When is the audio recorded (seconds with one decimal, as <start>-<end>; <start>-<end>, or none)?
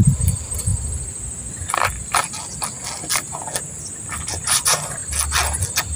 0.7-4.3; 5.0-6.0